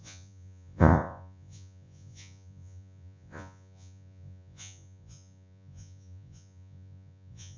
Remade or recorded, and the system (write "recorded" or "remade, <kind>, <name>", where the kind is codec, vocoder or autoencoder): remade, vocoder, Vocos